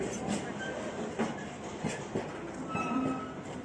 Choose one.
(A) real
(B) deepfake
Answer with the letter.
A